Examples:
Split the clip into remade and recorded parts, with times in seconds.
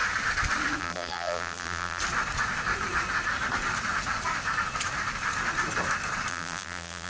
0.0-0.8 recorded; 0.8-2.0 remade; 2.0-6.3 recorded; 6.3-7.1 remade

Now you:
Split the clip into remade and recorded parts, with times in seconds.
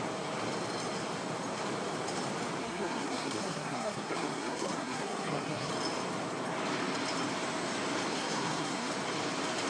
0.0-2.6 recorded; 2.6-5.7 remade; 5.7-8.1 recorded; 8.1-8.9 remade; 8.9-9.7 recorded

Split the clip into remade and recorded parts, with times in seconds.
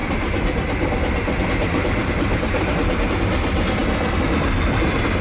0.0-3.1 remade; 3.1-5.2 recorded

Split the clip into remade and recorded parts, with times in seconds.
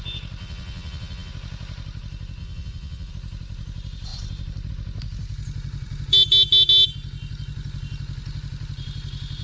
0.0-0.4 recorded; 0.4-1.3 remade; 1.3-2.4 recorded; 2.4-3.1 remade; 3.1-9.4 recorded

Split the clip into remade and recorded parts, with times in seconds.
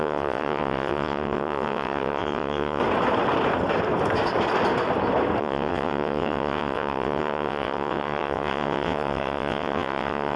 0.0-2.8 remade; 2.8-5.4 recorded; 5.4-10.4 remade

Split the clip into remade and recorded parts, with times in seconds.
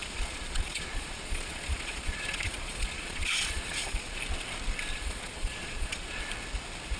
0.0-4.2 remade; 4.2-4.9 recorded; 4.9-6.2 remade; 6.2-7.0 recorded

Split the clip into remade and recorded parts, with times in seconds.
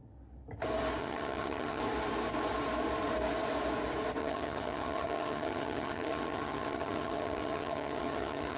0.0-1.0 recorded; 1.0-1.8 remade; 1.8-4.2 recorded; 4.2-8.6 remade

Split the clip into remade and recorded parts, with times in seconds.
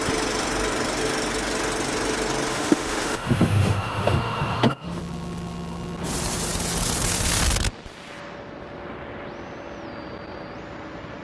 0.0-2.5 recorded; 2.5-5.0 remade; 5.0-11.2 recorded